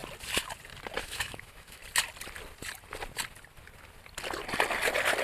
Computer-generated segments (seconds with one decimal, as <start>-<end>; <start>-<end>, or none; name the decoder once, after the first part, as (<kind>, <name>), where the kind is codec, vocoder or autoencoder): 1.0-1.8 (autoencoder, DAC-VAE)